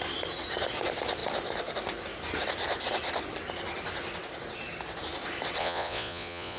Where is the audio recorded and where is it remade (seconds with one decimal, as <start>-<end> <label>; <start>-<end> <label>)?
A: 0.0-5.6 recorded; 5.6-6.6 remade